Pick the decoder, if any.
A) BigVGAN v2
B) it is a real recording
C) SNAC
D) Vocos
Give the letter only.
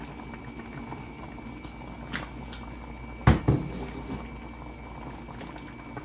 B